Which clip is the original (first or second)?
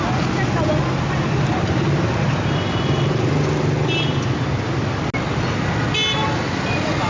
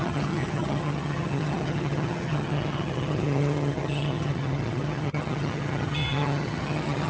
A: first